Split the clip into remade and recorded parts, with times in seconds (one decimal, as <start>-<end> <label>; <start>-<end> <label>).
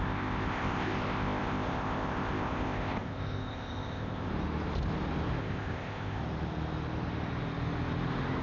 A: 0.0-4.3 remade; 4.3-5.4 recorded; 5.4-6.2 remade; 6.2-8.4 recorded